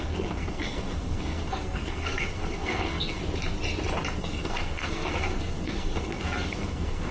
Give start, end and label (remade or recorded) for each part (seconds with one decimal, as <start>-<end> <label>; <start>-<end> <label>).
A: 0.0-3.2 remade; 3.2-4.2 recorded; 4.2-7.1 remade